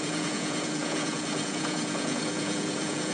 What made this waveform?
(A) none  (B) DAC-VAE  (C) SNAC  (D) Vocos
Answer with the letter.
D